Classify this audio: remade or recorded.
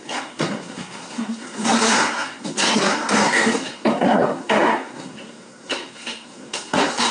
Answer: remade